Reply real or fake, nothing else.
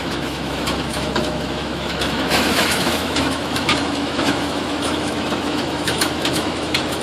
fake